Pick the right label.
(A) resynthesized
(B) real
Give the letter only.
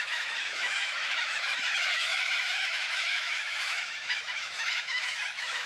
A